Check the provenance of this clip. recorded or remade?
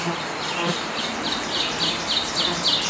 recorded